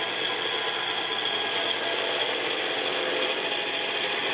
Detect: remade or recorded recorded